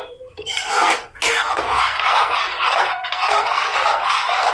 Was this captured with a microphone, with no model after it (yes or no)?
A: no